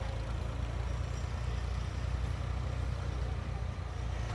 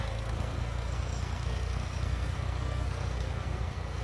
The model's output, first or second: second